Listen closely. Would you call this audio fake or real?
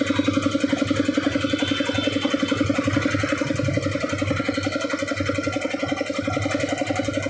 real